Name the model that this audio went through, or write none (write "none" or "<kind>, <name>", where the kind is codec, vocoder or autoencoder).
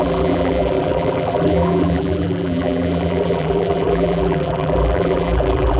vocoder, BigVGAN v2